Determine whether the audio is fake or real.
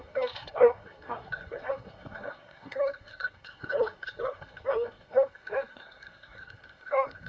fake